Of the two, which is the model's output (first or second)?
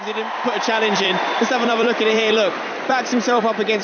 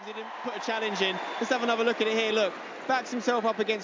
first